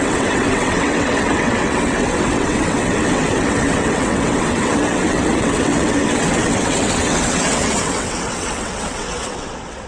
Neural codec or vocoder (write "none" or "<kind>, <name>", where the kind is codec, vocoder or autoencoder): vocoder, WaveNeXt